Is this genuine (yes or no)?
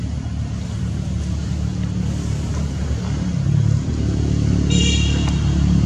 yes